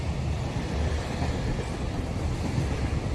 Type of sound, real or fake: real